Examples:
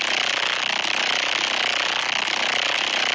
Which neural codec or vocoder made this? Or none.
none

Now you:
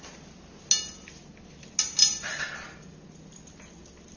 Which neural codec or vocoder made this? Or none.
none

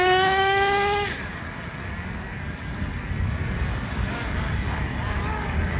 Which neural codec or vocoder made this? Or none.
codec, DAC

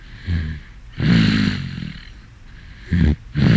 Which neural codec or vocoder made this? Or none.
none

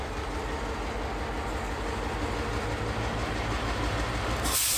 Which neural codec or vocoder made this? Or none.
none